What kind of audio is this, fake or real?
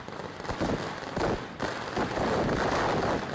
real